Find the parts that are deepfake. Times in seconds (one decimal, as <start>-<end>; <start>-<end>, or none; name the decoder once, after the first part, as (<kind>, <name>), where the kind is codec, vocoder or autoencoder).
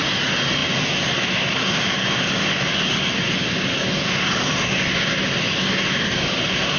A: none